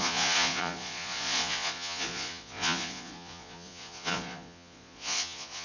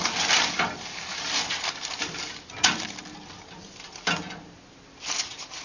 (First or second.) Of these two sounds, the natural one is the second